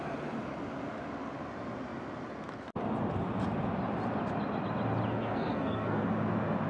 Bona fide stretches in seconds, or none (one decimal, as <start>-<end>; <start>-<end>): 0.0-5.1; 6.0-6.7